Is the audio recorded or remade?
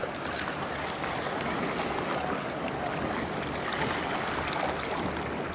recorded